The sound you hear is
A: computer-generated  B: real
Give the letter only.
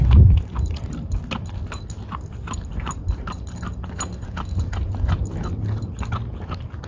B